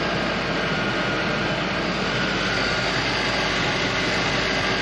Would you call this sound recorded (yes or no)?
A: yes